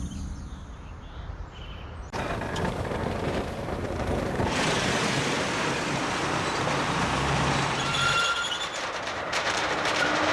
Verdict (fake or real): fake